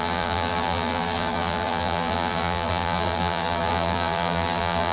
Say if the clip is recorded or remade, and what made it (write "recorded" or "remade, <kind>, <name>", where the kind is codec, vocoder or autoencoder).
remade, vocoder, BigVGAN v2